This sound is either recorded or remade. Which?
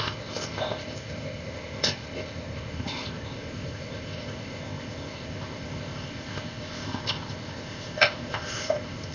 remade